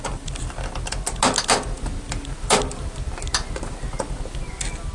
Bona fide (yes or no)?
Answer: yes